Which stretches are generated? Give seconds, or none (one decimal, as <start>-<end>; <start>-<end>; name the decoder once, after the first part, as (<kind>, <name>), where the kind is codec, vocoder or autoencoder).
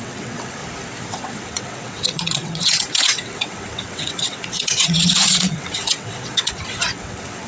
0.0-0.6 (vocoder, WaveNeXt); 1.1-7.5